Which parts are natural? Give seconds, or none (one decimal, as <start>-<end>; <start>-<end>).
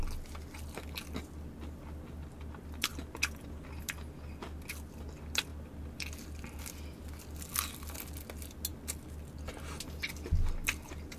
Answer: 0.0-11.2